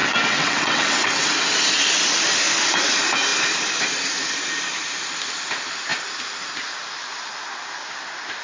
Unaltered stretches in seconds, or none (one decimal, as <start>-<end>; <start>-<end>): 1.3-8.4